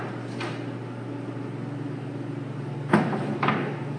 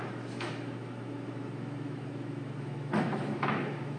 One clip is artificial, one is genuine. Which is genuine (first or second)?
first